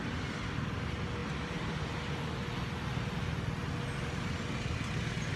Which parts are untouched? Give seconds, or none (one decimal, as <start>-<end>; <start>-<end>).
0.0-5.4